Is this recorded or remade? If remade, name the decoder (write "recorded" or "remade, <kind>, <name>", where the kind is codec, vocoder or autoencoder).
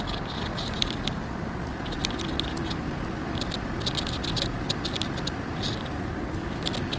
recorded